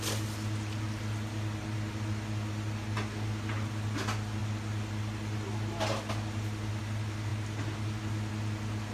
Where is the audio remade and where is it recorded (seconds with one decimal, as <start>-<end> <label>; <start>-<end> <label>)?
0.0-8.9 recorded

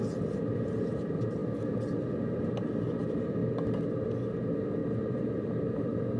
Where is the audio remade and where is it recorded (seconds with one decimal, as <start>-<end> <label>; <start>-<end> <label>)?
0.0-6.2 recorded

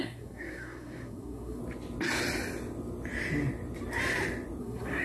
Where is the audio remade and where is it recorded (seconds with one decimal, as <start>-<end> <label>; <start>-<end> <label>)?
0.0-1.6 remade; 1.6-4.6 recorded; 4.6-5.0 remade

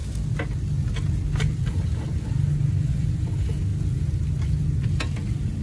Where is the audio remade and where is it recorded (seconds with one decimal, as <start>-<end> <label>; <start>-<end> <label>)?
0.0-5.6 recorded

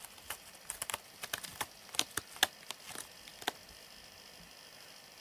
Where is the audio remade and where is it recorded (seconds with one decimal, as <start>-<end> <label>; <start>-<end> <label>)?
0.0-5.2 recorded

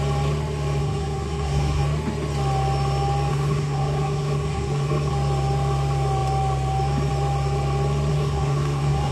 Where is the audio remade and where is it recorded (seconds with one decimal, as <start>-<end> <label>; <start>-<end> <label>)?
0.0-0.8 recorded; 0.8-1.8 remade; 1.8-3.3 recorded; 3.3-5.1 remade; 5.1-8.1 recorded; 8.1-9.1 remade

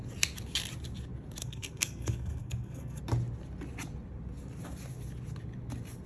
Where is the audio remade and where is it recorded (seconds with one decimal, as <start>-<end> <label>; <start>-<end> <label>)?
0.0-1.4 recorded; 1.4-3.0 remade; 3.0-6.1 recorded

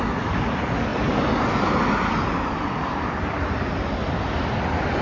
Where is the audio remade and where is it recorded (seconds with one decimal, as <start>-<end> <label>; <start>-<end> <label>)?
0.0-5.0 recorded